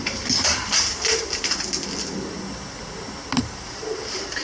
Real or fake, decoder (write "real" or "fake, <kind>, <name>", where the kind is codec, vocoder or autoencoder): real